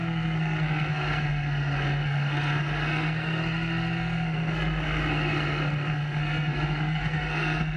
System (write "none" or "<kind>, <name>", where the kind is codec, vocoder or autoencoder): codec, SNAC